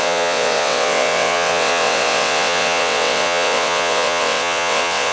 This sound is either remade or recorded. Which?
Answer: remade